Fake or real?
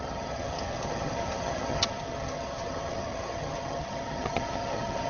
fake